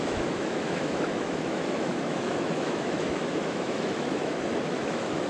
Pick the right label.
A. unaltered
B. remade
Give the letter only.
B